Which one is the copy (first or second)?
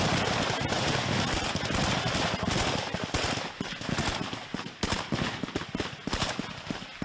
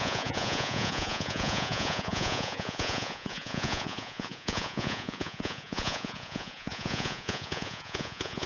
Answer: second